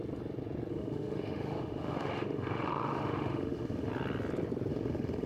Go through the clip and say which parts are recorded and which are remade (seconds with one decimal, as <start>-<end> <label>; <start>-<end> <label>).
0.0-0.7 recorded; 0.7-3.9 remade; 3.9-4.7 recorded; 4.7-5.3 remade